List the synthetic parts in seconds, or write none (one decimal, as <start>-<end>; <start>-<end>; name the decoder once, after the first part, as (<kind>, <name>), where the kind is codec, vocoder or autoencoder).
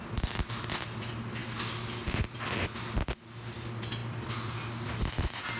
none